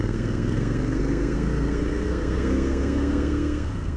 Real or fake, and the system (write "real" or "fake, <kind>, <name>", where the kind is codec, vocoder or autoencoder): fake, codec, SNAC